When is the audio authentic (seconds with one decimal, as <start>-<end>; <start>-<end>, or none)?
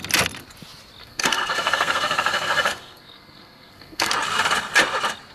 0.0-1.0; 4.1-5.3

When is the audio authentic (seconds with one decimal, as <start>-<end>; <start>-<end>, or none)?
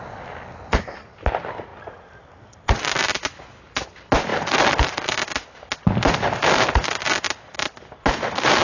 0.0-8.6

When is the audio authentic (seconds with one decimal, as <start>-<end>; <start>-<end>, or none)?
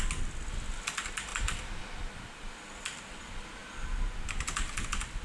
0.0-1.3; 1.8-5.2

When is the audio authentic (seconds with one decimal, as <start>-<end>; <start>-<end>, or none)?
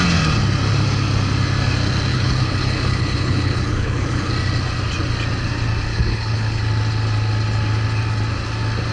0.0-2.1; 4.3-5.9; 6.6-8.9